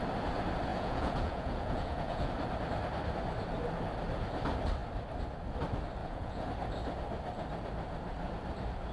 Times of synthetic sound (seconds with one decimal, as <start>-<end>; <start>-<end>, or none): 0.7-2.3; 6.0-6.5